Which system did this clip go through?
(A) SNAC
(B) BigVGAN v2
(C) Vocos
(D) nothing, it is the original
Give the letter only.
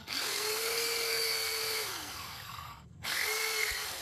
A